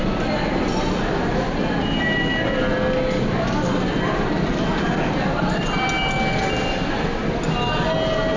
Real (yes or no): yes